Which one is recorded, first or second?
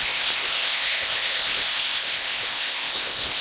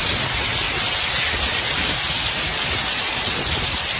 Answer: second